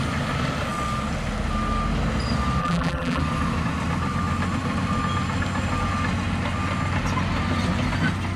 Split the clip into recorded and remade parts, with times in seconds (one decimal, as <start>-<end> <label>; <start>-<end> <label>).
0.0-2.6 recorded; 2.6-3.2 remade; 3.2-8.4 recorded